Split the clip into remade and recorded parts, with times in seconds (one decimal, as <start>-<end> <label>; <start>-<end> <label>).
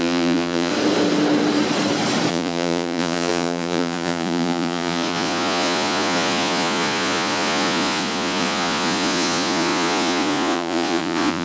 0.0-0.7 remade; 0.7-2.3 recorded; 2.3-11.4 remade